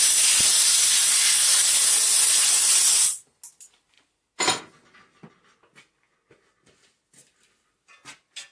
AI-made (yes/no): no